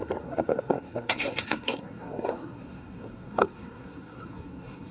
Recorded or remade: remade